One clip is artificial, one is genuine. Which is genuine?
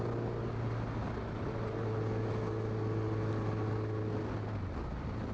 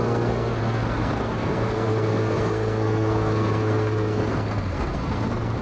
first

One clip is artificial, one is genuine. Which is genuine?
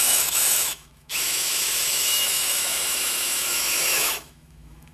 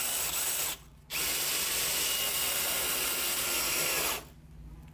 second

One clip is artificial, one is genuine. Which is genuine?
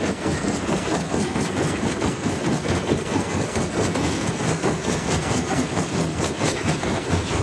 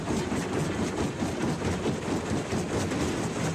second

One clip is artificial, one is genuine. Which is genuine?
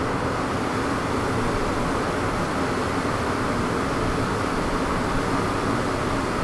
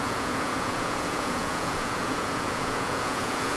first